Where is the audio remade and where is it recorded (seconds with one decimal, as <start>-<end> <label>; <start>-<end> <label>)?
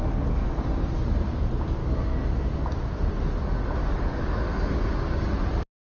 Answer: 0.0-0.7 remade; 0.7-1.8 recorded; 1.8-2.6 remade; 2.6-3.8 recorded; 3.8-5.2 remade; 5.2-5.8 recorded